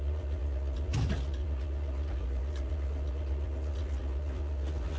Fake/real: fake